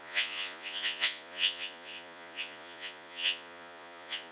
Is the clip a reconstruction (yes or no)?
yes